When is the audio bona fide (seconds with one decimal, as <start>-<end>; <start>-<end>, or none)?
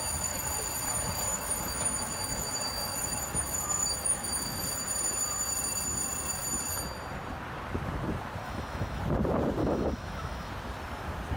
0.0-1.3; 4.6-8.4; 9.0-9.6; 10.5-11.4